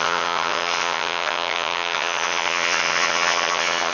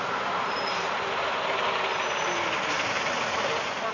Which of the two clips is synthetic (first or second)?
first